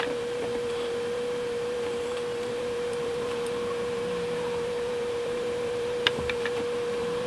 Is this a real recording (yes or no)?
no